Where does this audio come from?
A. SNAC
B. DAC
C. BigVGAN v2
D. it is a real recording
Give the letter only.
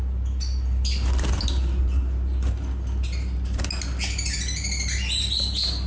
D